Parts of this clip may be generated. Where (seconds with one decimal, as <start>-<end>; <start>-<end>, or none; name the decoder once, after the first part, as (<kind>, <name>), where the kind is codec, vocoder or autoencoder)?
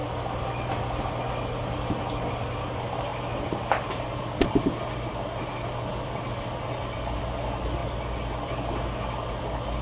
none